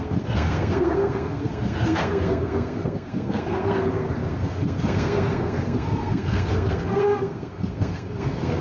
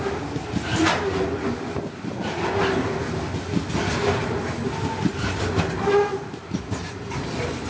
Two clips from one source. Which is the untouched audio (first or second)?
second